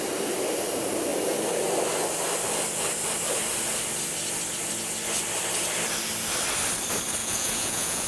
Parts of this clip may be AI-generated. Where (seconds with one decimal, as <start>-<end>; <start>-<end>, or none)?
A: 7.2-8.1

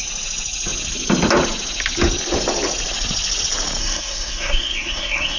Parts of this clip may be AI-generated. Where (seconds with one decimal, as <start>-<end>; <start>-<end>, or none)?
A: 3.8-5.4